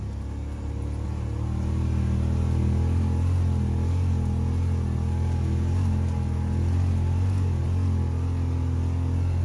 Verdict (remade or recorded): recorded